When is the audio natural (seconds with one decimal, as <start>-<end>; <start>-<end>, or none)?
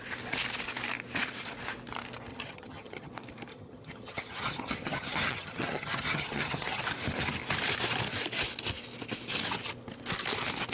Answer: 0.0-2.3; 3.1-3.5; 6.8-10.7